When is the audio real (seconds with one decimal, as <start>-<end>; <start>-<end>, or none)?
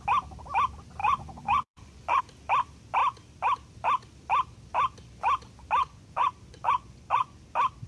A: 0.0-1.0; 2.2-5.8; 7.4-7.9